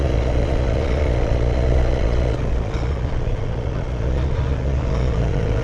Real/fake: fake